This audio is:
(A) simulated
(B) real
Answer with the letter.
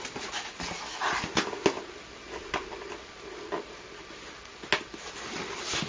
B